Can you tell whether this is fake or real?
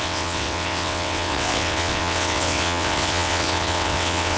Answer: fake